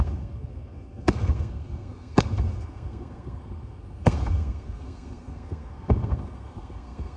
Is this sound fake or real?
fake